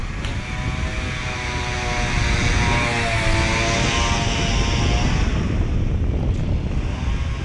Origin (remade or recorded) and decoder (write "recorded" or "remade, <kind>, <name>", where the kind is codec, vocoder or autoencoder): recorded